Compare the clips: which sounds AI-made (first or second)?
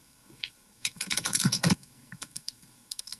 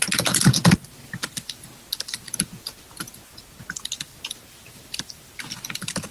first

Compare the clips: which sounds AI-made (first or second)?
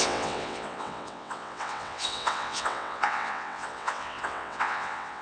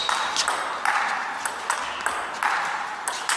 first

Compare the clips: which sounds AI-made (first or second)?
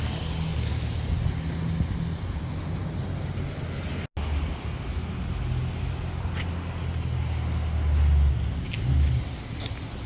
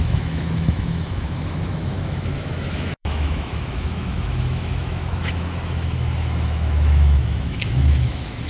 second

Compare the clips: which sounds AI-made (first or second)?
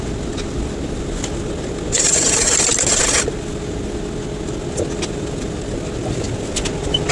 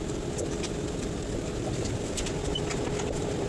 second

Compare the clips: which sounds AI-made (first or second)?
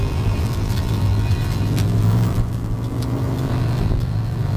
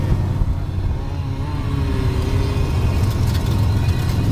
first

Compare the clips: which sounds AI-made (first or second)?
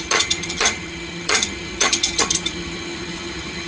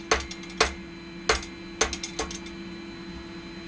first